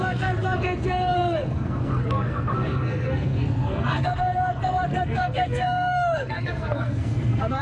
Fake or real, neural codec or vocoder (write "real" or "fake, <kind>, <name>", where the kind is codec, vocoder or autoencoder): fake, codec, SNAC